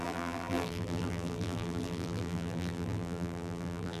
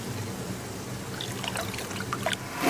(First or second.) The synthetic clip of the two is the first